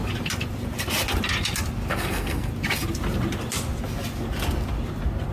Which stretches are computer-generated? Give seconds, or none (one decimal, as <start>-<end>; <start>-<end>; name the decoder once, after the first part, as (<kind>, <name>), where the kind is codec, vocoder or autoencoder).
1.9-2.5 (codec, SNAC)